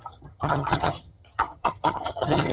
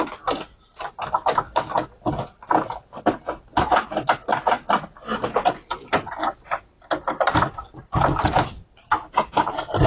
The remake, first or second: first